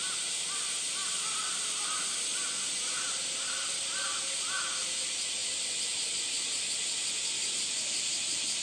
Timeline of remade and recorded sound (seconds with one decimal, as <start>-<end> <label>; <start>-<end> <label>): 0.0-1.0 recorded; 1.0-1.8 remade; 1.8-5.4 recorded; 5.4-6.1 remade; 6.1-8.6 recorded

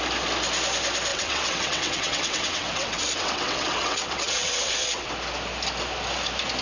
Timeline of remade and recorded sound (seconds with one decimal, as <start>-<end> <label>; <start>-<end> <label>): 0.0-1.1 recorded; 1.1-5.1 remade; 5.1-6.6 recorded

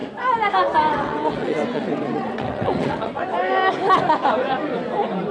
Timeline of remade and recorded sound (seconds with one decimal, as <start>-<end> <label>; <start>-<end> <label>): 0.0-0.9 recorded; 0.9-3.2 remade; 3.2-5.3 recorded

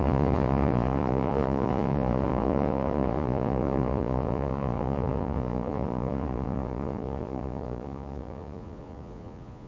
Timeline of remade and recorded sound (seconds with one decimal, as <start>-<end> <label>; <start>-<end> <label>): 0.0-9.7 remade

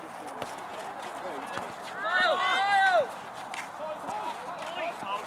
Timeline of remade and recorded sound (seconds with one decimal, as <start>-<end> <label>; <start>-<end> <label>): 0.0-0.7 recorded; 0.7-1.3 remade; 1.3-5.3 recorded

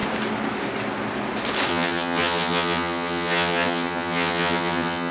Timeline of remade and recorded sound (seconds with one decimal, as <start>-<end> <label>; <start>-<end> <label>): 0.0-1.7 recorded; 1.7-5.1 remade